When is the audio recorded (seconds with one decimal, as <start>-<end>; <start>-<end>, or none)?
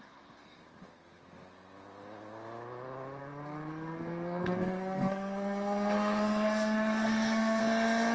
0.0-3.2; 7.6-8.1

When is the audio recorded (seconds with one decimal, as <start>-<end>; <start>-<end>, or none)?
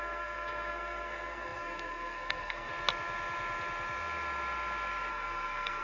2.7-5.1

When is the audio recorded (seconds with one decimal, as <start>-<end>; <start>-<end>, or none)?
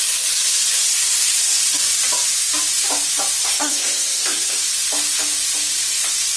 0.0-0.9; 1.6-3.4; 4.6-6.4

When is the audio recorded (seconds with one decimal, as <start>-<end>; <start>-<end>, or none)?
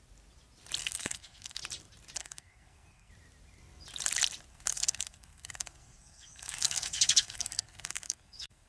0.0-0.8; 1.6-2.2; 3.1-4.5